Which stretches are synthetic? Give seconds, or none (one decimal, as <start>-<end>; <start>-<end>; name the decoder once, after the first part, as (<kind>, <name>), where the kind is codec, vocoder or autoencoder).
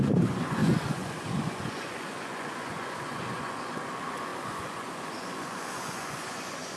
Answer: 0.0-6.8 (vocoder, Vocos)